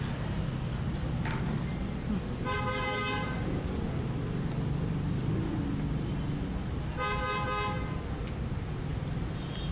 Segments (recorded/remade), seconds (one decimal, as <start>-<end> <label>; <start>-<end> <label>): 0.0-9.7 recorded